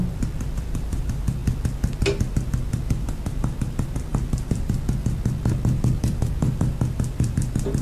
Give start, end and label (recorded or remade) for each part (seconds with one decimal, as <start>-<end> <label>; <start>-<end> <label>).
0.0-7.8 remade